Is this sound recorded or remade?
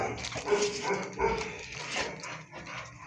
recorded